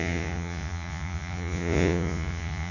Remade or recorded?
remade